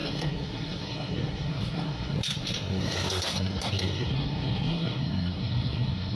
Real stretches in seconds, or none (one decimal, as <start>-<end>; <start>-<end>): none